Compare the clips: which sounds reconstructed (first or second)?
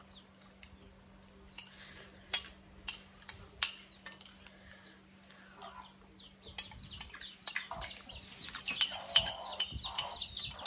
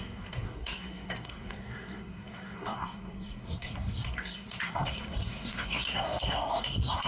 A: second